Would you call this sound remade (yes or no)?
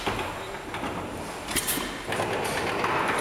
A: no